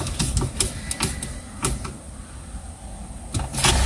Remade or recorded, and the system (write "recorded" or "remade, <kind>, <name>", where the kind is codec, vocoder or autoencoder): recorded